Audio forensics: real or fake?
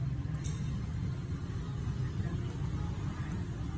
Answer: real